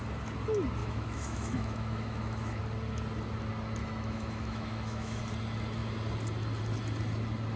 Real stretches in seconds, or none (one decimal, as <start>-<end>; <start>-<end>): 0.0-0.8; 2.6-3.8; 5.2-7.6